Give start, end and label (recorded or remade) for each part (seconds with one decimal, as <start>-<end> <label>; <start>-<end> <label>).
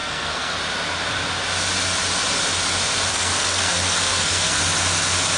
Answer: 0.0-0.5 remade; 0.5-3.1 recorded; 3.1-4.6 remade; 4.6-5.4 recorded